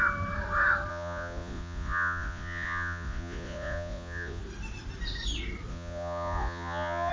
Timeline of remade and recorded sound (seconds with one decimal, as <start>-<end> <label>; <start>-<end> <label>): 0.0-0.9 recorded; 0.9-4.4 remade; 4.4-5.7 recorded; 5.7-7.1 remade